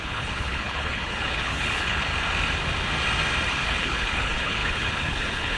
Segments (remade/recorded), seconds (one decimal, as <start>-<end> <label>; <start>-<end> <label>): 0.0-2.1 remade; 2.1-3.5 recorded; 3.5-5.6 remade